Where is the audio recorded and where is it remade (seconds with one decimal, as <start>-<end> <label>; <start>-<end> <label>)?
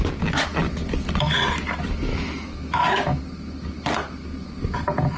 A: 0.0-2.1 recorded; 2.1-3.2 remade; 3.2-5.2 recorded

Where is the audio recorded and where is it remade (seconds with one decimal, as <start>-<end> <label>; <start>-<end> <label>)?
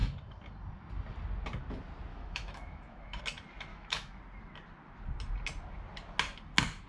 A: 0.0-2.1 recorded; 2.1-3.2 remade; 3.2-3.7 recorded; 3.7-4.2 remade; 4.2-6.9 recorded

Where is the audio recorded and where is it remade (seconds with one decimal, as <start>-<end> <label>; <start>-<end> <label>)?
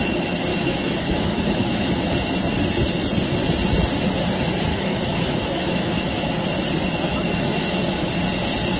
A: 0.0-0.5 recorded; 0.5-1.9 remade; 1.9-4.7 recorded; 4.7-6.3 remade; 6.3-7.1 recorded; 7.1-8.1 remade; 8.1-8.8 recorded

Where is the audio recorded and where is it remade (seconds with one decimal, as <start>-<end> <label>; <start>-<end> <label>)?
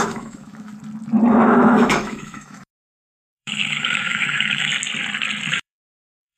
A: 0.0-0.7 remade; 0.7-1.3 recorded; 1.3-4.7 remade; 4.7-5.5 recorded; 5.5-6.4 remade